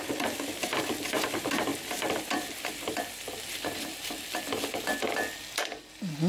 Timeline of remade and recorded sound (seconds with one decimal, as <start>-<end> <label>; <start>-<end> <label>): 0.0-6.3 recorded